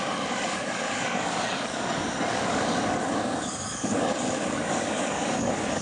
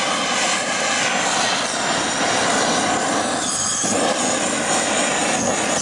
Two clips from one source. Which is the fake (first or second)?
first